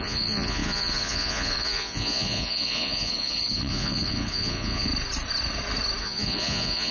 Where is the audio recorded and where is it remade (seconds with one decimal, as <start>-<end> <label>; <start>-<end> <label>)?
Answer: 0.0-4.9 remade; 4.9-6.0 recorded; 6.0-6.9 remade